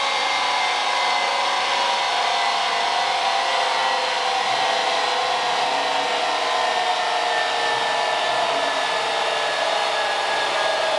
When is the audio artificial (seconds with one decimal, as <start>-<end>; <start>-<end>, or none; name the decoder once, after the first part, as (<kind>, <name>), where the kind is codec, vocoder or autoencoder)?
none